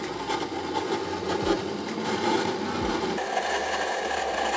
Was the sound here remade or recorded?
remade